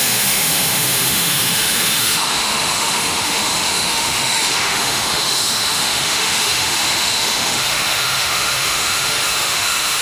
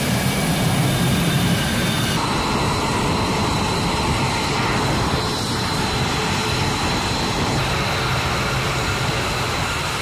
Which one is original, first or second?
second